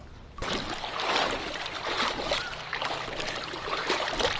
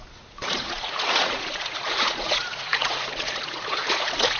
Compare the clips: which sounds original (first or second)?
first